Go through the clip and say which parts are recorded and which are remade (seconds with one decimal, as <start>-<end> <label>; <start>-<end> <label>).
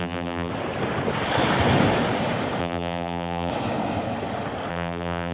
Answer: 0.0-0.5 remade; 0.5-2.6 recorded; 2.6-3.5 remade; 3.5-4.7 recorded; 4.7-5.3 remade